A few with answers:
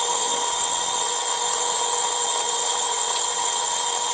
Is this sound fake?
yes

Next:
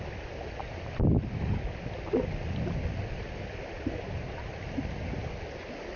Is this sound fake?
no